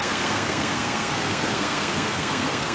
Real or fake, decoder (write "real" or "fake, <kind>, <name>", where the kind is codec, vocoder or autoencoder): fake, codec, SNAC